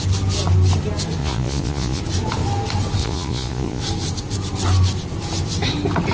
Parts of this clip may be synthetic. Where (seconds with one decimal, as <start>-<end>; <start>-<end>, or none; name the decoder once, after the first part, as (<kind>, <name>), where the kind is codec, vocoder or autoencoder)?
1.2-2.0 (vocoder, Vocos); 3.0-3.8